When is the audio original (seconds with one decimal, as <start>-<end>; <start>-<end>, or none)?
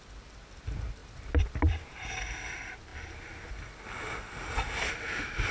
0.0-5.5